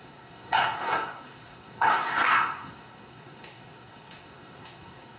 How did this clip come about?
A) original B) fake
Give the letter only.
B